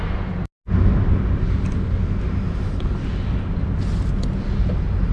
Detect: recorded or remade recorded